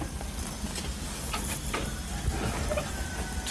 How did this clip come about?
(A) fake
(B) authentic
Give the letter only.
B